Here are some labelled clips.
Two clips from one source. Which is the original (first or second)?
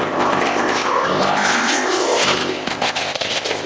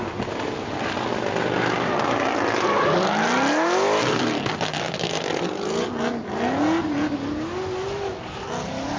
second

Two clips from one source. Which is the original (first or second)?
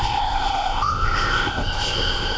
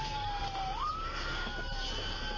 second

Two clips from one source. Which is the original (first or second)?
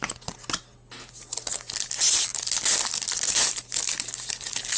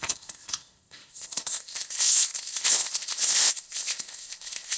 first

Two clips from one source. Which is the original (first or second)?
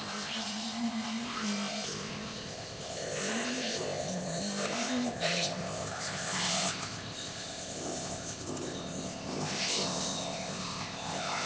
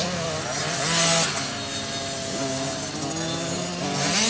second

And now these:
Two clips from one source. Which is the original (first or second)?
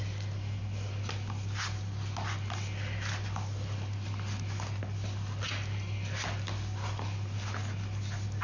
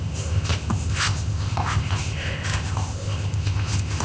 first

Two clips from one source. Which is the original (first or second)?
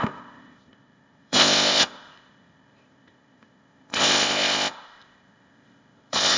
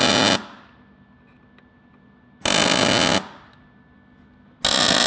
second